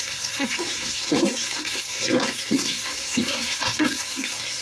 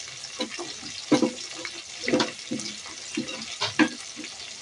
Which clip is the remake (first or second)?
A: first